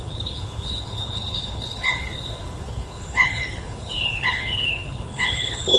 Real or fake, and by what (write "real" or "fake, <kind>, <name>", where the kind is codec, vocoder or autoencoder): fake, codec, HILCodec